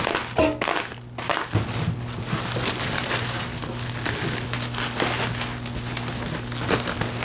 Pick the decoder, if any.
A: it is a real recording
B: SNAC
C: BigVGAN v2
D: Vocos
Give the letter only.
A